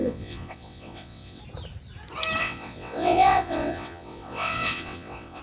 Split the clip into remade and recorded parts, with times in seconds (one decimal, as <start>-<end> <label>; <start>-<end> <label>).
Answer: 0.0-1.4 remade; 1.4-2.4 recorded; 2.4-5.4 remade